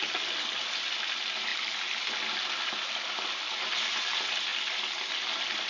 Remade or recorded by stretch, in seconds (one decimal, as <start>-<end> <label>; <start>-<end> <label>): 0.0-5.7 recorded

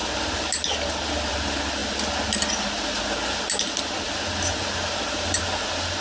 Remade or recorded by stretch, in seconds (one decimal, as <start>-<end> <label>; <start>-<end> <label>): 0.0-6.0 recorded

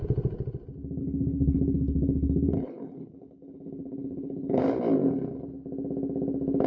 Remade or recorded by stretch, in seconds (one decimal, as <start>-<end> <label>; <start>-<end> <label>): 0.0-1.0 recorded; 1.0-4.6 remade; 4.6-6.7 recorded

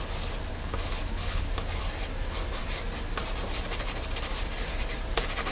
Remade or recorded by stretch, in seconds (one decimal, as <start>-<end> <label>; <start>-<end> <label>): 0.0-0.5 recorded; 0.5-1.5 remade; 1.5-5.5 recorded

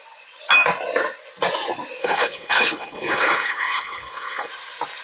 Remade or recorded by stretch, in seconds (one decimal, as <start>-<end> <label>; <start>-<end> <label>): 0.0-2.0 recorded; 2.0-4.5 remade; 4.5-5.0 recorded

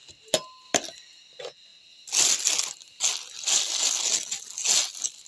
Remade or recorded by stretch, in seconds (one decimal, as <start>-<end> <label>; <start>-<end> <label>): 0.0-5.3 recorded

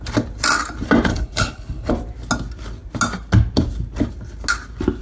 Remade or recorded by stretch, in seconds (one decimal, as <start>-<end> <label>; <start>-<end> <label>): 0.0-1.1 recorded; 1.1-1.9 remade; 1.9-5.0 recorded

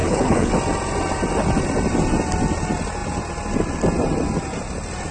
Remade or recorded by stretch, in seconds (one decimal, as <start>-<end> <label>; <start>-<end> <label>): 0.0-0.5 remade; 0.5-5.1 recorded